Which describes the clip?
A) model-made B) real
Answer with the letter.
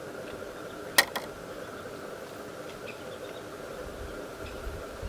B